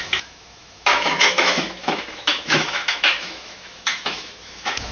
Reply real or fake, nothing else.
fake